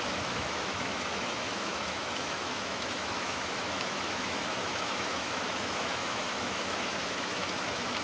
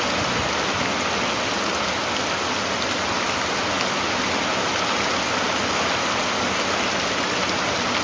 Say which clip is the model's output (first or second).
first